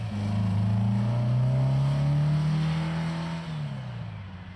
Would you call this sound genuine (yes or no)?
yes